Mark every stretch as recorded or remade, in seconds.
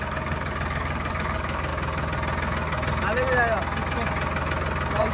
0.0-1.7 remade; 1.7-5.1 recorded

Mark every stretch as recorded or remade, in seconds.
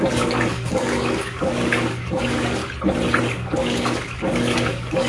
0.0-2.6 remade; 2.6-3.2 recorded; 3.2-5.1 remade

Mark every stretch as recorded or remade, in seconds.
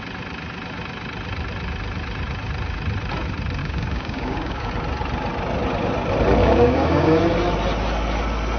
0.0-3.6 recorded; 3.6-4.7 remade; 4.7-6.4 recorded; 6.4-7.2 remade; 7.2-8.6 recorded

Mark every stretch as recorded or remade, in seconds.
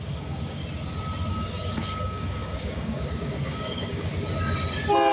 0.0-0.6 remade; 0.6-1.3 recorded; 1.3-4.1 remade; 4.1-5.1 recorded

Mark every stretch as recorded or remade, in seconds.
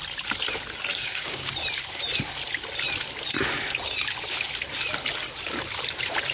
0.0-0.9 recorded; 0.9-1.5 remade; 1.5-6.3 recorded